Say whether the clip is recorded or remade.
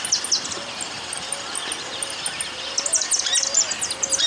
recorded